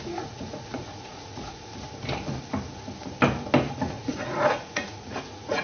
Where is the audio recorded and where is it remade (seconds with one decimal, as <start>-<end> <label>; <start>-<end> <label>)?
0.0-1.7 remade; 1.7-3.7 recorded; 3.7-5.6 remade